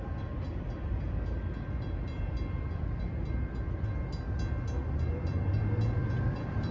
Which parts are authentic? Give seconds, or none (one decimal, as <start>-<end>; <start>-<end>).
0.0-4.8; 5.6-6.0

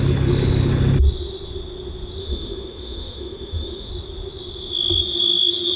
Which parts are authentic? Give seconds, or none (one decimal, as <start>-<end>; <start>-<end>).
0.0-2.2; 3.9-5.8

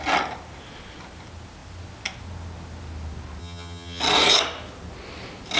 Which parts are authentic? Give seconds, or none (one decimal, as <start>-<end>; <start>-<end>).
0.0-3.4; 4.0-5.6